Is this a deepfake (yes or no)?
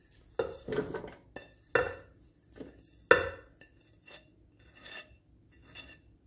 no